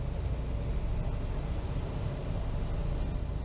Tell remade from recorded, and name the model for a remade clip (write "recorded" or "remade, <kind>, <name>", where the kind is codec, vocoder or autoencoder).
recorded